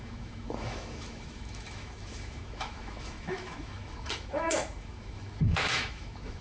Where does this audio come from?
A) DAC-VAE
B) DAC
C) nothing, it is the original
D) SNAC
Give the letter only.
A